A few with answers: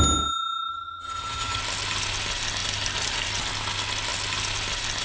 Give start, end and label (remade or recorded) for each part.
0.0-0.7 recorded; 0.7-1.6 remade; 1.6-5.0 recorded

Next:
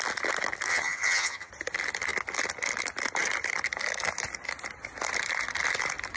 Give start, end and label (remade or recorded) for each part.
0.0-0.7 recorded; 0.7-1.5 remade; 1.5-6.2 recorded

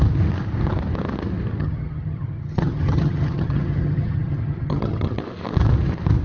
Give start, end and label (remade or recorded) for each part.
0.0-1.6 recorded; 1.6-5.2 remade; 5.2-6.2 recorded

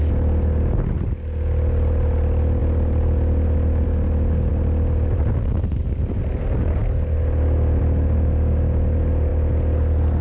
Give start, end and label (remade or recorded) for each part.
0.0-10.2 recorded

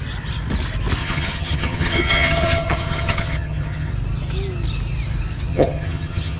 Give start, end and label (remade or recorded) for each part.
0.0-1.0 recorded; 1.0-3.9 remade; 3.9-5.5 recorded; 5.5-6.4 remade

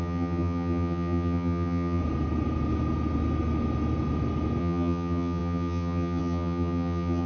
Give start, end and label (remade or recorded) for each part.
0.0-2.0 remade; 2.0-4.6 recorded; 4.6-7.3 remade